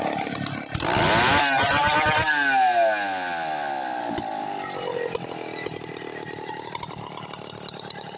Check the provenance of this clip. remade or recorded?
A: recorded